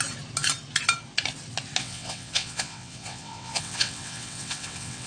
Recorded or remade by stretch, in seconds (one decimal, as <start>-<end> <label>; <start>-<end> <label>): 0.0-1.8 recorded; 1.8-5.1 remade